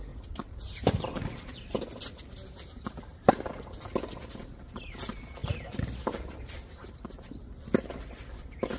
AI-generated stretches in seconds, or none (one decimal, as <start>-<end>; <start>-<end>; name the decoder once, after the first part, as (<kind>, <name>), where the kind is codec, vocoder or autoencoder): 5.4-6.7 (vocoder, BigVGAN v2)